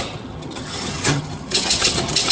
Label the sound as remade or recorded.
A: remade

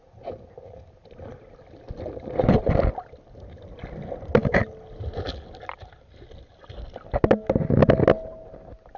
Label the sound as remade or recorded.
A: recorded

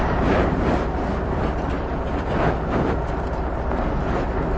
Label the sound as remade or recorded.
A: recorded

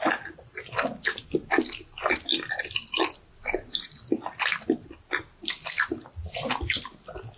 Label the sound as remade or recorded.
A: recorded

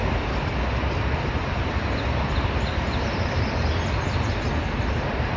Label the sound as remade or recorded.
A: recorded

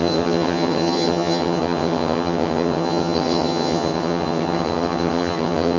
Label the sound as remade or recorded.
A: remade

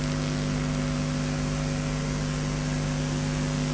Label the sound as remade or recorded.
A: recorded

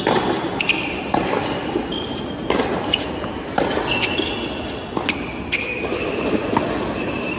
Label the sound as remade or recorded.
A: recorded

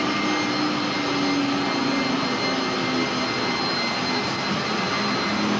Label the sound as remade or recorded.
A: recorded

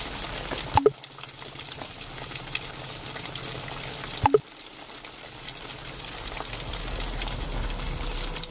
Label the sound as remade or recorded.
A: recorded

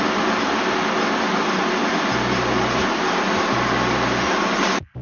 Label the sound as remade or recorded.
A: recorded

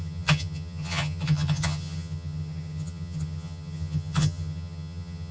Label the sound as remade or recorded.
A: remade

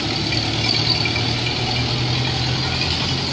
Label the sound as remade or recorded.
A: recorded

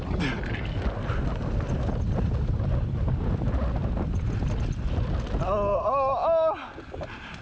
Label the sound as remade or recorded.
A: recorded